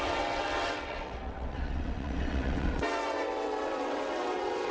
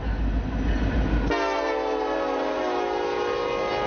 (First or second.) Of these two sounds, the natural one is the second